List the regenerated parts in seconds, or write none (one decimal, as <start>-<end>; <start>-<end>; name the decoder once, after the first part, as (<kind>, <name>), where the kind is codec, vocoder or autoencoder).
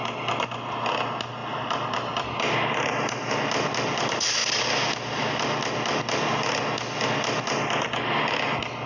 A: 1.4-3.3 (vocoder, BigVGAN v2)